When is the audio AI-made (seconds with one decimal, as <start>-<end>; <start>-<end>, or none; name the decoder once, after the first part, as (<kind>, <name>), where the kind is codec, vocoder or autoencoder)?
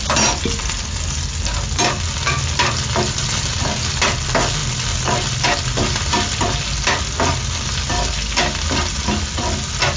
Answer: none